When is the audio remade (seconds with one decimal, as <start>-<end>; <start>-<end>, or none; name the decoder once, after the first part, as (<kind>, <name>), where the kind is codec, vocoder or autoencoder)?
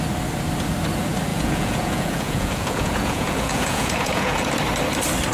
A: 1.3-4.5 (vocoder, Vocos)